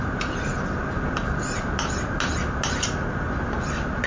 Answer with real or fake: real